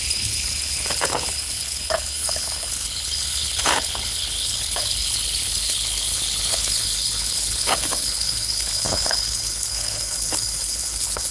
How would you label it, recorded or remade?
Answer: remade